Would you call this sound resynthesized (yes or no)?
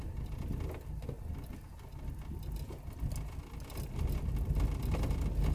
no